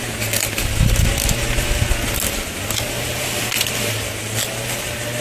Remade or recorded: recorded